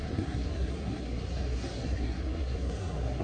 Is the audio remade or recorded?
remade